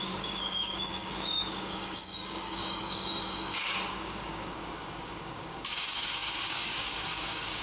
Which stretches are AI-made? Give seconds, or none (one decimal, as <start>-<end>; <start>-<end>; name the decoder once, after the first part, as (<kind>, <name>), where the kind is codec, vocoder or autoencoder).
0.0-7.6 (codec, DAC)